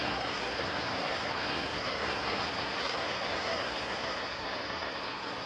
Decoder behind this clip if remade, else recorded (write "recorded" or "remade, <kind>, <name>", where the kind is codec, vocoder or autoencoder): remade, codec, SNAC